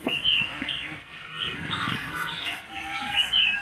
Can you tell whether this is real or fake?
fake